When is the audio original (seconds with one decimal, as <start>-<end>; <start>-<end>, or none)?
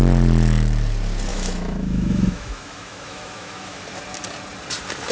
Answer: 0.0-1.3; 3.8-5.1